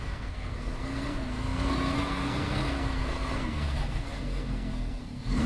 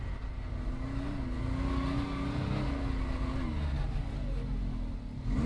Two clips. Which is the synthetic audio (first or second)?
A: first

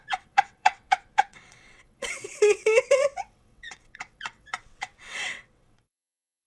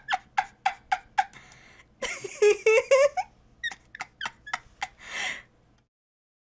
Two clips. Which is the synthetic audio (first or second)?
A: first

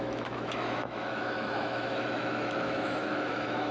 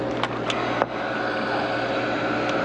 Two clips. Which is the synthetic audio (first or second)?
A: first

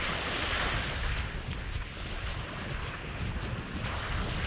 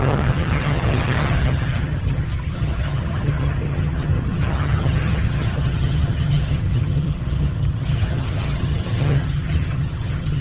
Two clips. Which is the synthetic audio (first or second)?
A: second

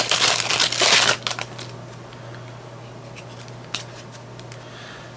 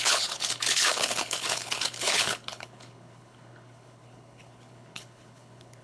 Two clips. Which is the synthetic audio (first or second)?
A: second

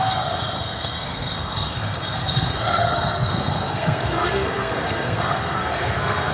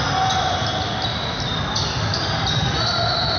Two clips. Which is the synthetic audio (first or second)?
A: first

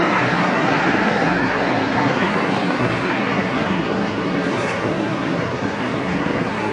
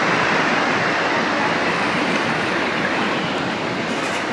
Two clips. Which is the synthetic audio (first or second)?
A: first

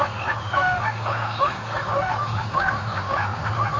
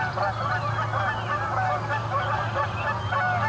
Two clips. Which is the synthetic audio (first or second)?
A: first